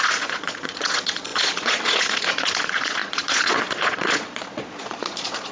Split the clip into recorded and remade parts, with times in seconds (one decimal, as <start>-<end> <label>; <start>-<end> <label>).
0.0-5.5 remade